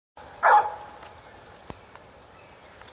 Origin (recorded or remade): recorded